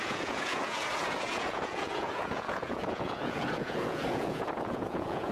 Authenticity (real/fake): fake